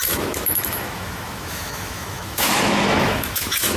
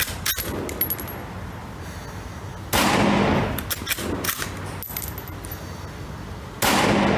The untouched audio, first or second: second